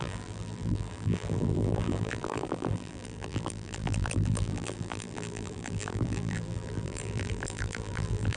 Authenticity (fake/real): fake